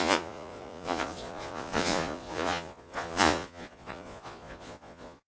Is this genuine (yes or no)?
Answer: no